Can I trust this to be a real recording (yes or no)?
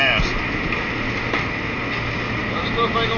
yes